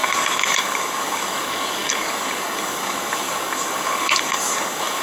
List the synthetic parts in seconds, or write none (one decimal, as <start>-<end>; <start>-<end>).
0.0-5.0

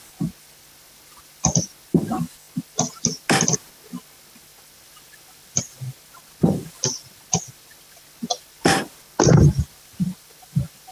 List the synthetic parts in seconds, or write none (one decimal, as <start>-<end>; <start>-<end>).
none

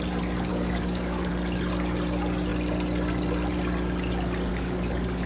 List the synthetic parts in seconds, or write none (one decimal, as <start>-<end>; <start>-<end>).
0.5-1.3; 4.5-5.3

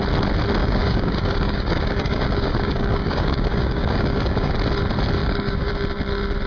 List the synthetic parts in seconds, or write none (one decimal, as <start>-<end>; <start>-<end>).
0.6-4.5; 5.2-5.7

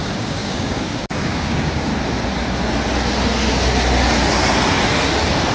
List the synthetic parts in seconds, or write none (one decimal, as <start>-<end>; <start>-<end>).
0.0-1.9

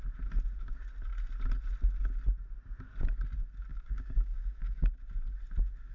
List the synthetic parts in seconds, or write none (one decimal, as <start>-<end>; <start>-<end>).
3.7-4.9

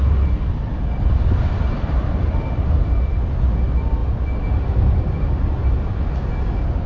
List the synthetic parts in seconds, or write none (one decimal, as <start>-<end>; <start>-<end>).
none

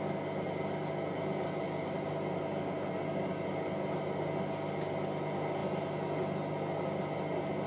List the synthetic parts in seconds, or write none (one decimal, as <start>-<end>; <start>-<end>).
none